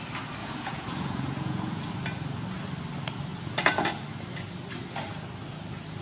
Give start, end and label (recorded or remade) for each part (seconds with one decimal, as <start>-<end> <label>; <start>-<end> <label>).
0.0-0.4 recorded; 0.4-1.9 remade; 1.9-6.0 recorded